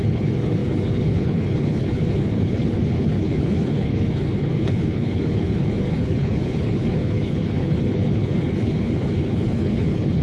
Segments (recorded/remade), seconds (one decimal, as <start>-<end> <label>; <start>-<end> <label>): 0.0-10.2 remade